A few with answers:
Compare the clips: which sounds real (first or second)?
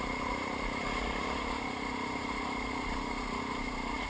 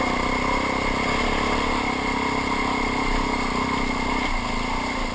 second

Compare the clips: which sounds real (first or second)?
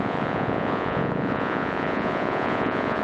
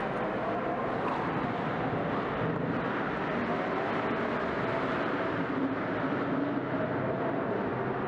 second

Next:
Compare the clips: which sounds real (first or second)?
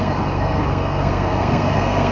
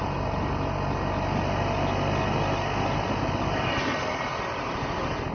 second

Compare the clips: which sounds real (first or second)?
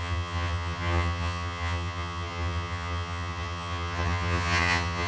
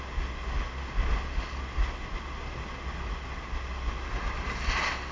second